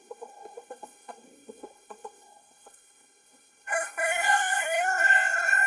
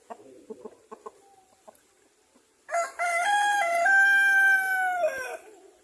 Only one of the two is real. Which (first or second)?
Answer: second